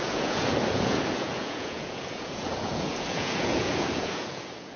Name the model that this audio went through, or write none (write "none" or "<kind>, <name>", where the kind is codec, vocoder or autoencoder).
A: vocoder, Vocos